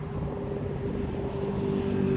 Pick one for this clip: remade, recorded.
recorded